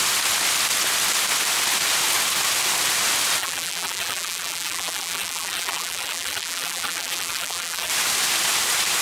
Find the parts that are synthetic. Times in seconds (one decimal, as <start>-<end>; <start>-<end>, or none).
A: 3.4-7.9